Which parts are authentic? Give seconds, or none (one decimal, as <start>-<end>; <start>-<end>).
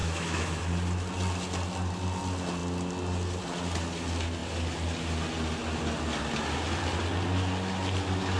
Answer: 0.6-8.4